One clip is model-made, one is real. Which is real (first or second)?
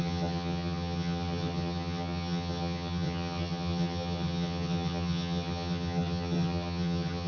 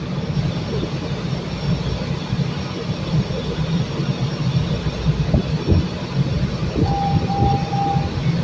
second